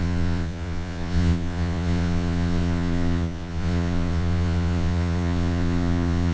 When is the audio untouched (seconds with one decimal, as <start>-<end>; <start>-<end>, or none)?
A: none